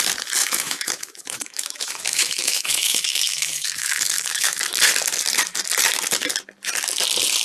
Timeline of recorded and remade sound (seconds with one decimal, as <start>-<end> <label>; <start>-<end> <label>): 0.0-0.4 recorded; 0.4-4.6 remade; 4.6-7.4 recorded